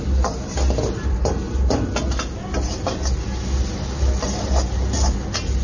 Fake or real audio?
real